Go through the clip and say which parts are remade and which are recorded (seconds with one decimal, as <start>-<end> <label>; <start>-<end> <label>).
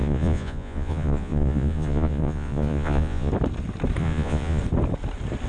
0.0-3.3 remade; 3.3-4.0 recorded; 4.0-4.6 remade; 4.6-5.5 recorded